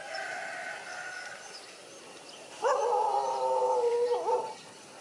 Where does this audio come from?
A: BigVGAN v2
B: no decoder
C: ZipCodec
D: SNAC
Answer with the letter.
A